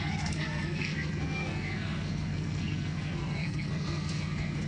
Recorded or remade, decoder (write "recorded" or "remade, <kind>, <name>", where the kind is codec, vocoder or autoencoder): remade, codec, SNAC